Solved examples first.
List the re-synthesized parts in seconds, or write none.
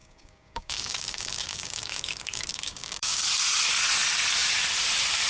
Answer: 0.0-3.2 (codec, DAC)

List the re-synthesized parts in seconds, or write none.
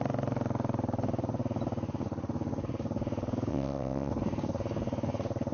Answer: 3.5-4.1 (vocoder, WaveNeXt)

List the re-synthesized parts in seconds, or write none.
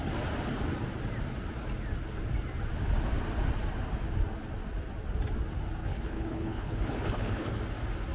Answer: 5.8-7.5 (codec, HILCodec)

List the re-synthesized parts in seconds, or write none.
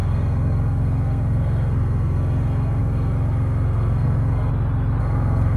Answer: 0.0-4.5 (codec, SNAC); 5.0-5.6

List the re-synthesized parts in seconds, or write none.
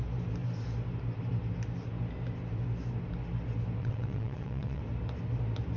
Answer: 3.8-4.8 (vocoder, WaveNeXt)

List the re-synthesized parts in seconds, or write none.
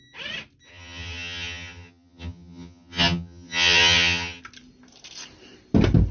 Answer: 0.7-4.4 (vocoder, HiFi-GAN)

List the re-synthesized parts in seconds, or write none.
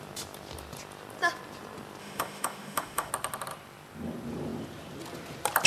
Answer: 2.0-3.1 (autoencoder, DAC-VAE)